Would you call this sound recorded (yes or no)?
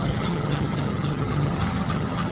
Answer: no